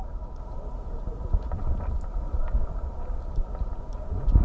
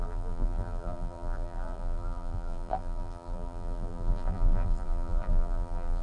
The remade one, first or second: second